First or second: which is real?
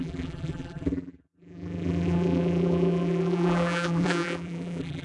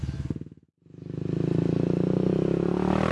second